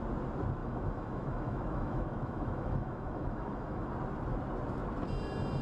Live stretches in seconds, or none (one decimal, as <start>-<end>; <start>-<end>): 0.0-0.6; 3.9-5.6